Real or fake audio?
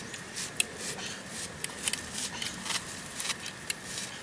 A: real